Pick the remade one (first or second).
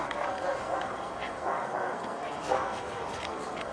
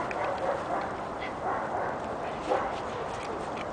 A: first